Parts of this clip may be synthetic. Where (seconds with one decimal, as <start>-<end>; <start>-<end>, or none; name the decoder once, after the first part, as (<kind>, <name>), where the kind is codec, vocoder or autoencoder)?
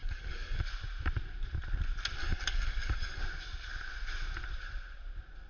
0.0-0.6 (codec, DAC); 2.2-3.2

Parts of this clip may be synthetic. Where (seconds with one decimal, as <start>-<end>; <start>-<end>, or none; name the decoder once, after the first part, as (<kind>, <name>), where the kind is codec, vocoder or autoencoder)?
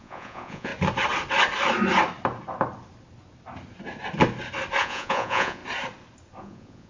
0.0-0.7 (vocoder, Vocos); 4.8-5.6; 6.4-6.9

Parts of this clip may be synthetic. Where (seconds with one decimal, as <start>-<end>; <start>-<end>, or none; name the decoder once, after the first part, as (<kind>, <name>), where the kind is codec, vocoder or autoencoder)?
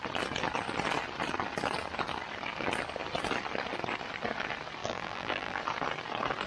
4.8-5.6 (vocoder, BigVGAN v2)